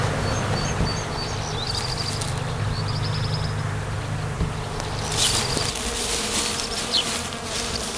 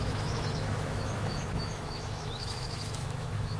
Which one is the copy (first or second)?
second